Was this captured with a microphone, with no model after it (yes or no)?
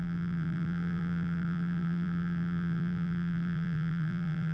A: no